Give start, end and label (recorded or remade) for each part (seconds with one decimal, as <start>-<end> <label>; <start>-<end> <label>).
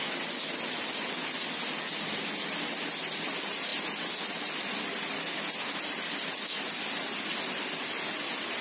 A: 0.0-8.6 recorded